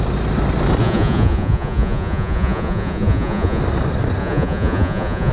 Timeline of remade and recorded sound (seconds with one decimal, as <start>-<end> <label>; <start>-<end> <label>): 0.0-0.8 recorded; 0.8-3.6 remade; 3.6-4.2 recorded; 4.2-5.3 remade